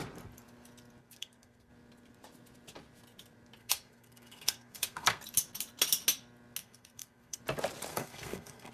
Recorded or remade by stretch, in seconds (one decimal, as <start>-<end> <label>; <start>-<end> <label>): 0.0-1.0 recorded; 1.0-1.7 remade; 1.7-3.6 recorded; 3.6-5.2 remade; 5.2-6.6 recorded; 6.6-7.4 remade; 7.4-7.9 recorded; 7.9-8.7 remade